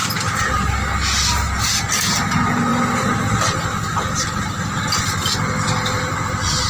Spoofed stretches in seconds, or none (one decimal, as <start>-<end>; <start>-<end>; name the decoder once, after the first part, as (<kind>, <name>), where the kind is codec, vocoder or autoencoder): none